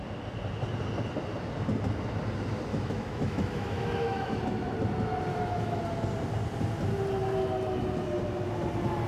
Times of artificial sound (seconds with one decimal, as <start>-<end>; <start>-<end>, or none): 2.7-4.4; 5.3-5.8